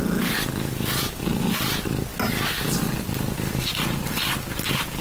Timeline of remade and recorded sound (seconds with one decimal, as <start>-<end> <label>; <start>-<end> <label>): 0.0-5.0 recorded